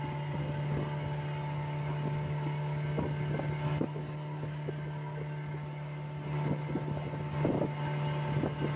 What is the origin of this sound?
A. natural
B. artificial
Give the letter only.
A